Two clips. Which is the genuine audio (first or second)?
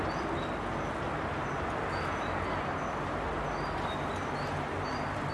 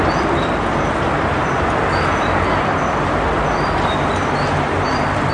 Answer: first